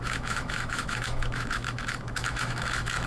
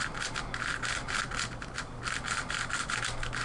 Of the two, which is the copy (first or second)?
first